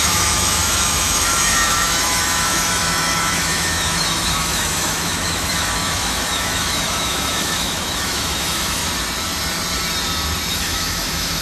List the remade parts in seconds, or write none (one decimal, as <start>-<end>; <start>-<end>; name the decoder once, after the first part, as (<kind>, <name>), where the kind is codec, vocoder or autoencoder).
0.0-8.8 (autoencoder, DAC-VAE); 10.5-11.4